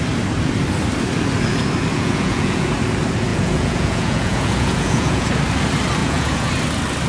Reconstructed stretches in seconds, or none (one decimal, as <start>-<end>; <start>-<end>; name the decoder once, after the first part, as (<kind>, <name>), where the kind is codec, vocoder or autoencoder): 1.9-2.7 (vocoder, Vocos); 3.3-5.3; 6.0-6.5